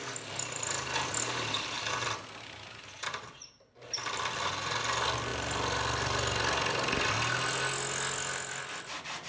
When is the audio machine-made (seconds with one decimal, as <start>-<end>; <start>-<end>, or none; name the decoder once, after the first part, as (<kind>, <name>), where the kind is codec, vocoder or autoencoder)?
none